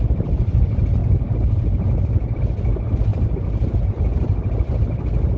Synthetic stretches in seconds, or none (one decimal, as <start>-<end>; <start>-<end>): none